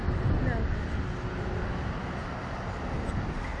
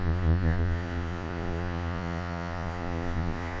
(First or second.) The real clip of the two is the first